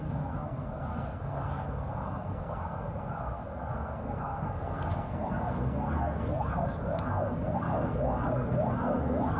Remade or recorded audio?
remade